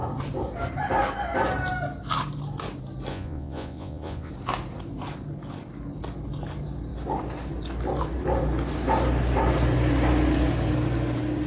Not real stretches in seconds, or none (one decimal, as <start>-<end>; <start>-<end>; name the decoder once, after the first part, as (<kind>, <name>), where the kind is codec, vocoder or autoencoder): 3.1-4.3 (vocoder, Vocos)